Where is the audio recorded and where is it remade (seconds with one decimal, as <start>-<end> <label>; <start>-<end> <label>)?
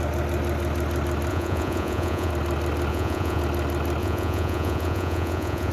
0.0-1.3 recorded; 1.3-2.3 remade; 2.3-2.9 recorded; 2.9-3.4 remade; 3.4-4.0 recorded; 4.0-5.7 remade